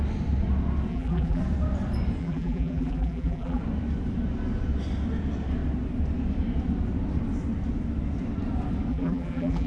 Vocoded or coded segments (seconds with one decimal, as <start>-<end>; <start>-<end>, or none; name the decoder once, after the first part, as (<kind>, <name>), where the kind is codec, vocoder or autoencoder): 0.9-1.4 (vocoder, BigVGAN v2); 2.2-3.6; 8.9-9.7